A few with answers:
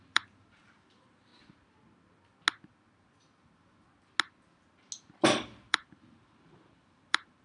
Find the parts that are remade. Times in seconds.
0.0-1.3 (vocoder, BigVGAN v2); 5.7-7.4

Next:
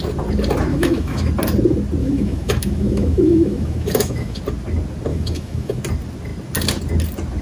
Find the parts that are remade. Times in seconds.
0.7-1.3 (autoencoder, DAC-VAE); 2.0-4.4; 5.1-5.8

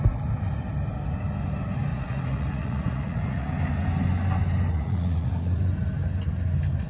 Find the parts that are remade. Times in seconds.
1.9-3.5 (vocoder, Vocos); 4.7-5.7

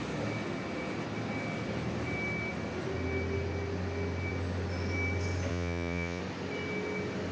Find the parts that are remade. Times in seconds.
5.5-6.2 (vocoder, Vocos)

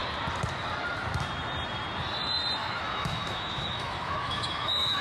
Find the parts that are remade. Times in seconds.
2.6-5.0 (autoencoder, DAC-VAE)

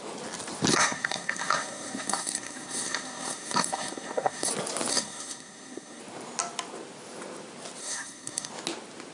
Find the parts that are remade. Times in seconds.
0.7-4.5 (codec, SNAC); 4.9-6.0; 7.8-8.5

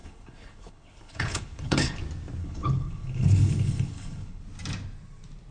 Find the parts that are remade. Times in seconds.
0.0-2.0 (codec, HILCodec); 2.4-4.4